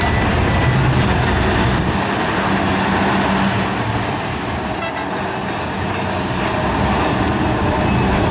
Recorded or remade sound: recorded